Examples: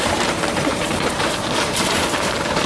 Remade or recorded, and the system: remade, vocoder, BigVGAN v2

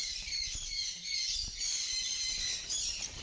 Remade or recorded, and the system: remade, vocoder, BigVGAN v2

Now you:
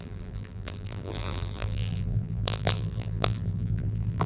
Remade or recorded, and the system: remade, vocoder, BigVGAN v2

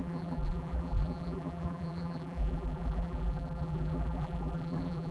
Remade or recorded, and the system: remade, vocoder, BigVGAN v2